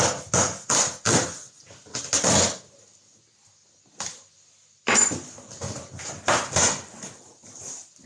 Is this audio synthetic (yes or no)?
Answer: no